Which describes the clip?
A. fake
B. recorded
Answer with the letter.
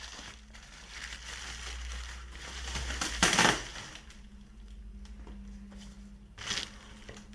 B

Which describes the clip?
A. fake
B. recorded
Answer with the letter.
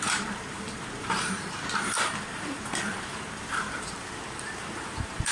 A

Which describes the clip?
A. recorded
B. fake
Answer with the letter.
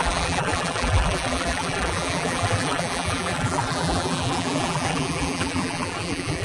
B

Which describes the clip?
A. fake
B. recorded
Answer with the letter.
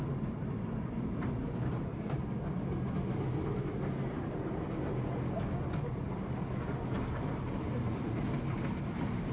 B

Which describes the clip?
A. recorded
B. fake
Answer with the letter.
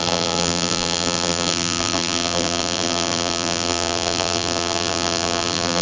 B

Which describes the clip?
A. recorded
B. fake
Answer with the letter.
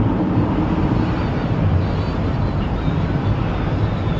B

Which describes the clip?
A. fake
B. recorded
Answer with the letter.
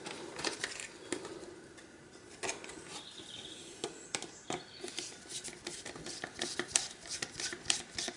A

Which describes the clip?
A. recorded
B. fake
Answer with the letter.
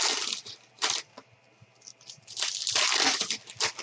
A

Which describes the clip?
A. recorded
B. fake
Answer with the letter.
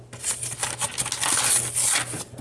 A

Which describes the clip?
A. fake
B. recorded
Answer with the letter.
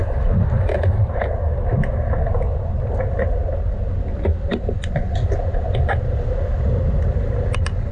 B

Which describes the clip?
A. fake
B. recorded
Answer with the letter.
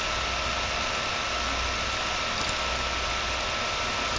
B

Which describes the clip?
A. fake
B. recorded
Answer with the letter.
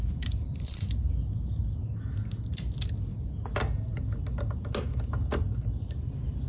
B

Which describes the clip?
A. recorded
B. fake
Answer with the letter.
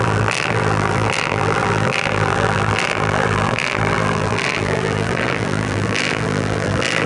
B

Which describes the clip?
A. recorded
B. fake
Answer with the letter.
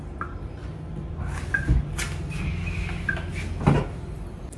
A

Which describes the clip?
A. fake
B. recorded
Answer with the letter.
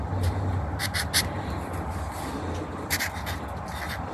B